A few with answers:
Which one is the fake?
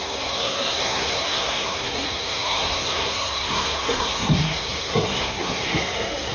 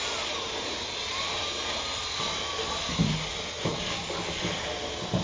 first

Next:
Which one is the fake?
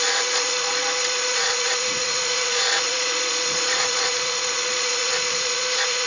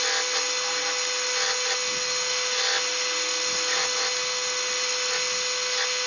first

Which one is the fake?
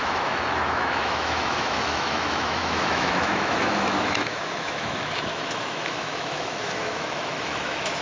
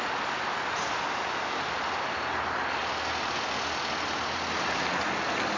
first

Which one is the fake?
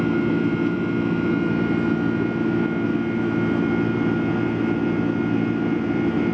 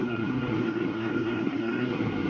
second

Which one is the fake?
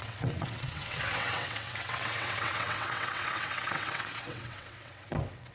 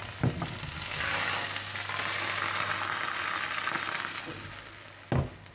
first